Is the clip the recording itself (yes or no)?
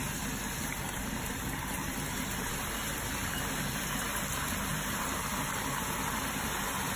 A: no